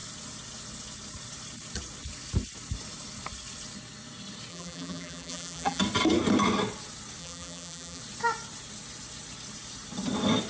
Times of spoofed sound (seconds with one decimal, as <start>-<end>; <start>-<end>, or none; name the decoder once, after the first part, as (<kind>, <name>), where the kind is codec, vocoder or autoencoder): 4.5-5.8 (vocoder, BigVGAN v2); 7.2-8.0